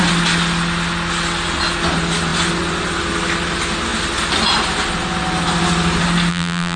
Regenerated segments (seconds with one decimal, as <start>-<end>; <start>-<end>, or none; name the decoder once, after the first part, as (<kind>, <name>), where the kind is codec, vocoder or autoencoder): 6.3-6.8 (vocoder, BigVGAN v2)